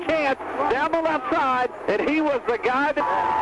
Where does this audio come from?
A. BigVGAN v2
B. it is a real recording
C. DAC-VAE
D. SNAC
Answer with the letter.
B